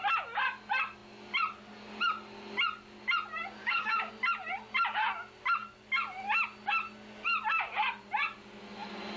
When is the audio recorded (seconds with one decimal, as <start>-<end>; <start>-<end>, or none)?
0.0-3.6; 4.1-9.2